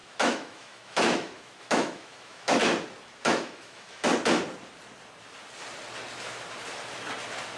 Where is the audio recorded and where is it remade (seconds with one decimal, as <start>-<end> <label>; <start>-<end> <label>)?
0.0-2.6 remade; 2.6-3.2 recorded; 3.2-4.1 remade; 4.1-7.6 recorded